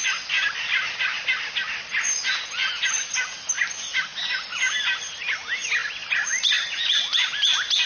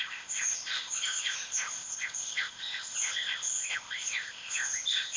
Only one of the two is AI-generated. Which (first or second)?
second